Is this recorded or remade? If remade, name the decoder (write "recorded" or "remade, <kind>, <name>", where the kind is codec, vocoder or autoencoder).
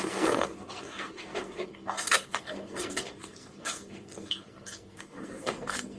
remade, codec, SNAC